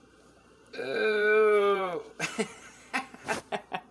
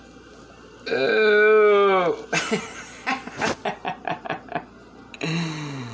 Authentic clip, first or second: second